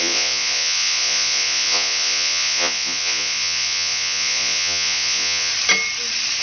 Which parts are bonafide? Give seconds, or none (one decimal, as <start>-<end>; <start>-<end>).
5.5-6.4